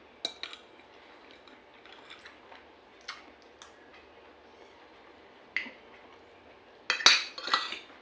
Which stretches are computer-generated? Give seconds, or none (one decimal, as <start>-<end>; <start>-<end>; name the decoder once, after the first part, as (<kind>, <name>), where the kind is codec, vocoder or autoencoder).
none